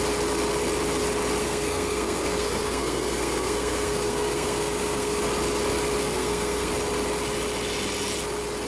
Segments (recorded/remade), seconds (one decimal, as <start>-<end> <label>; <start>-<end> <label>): 0.0-1.4 recorded; 1.4-5.2 remade; 5.2-6.0 recorded; 6.0-6.7 remade; 6.7-8.7 recorded